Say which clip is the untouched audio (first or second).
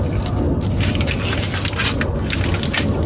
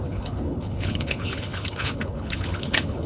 first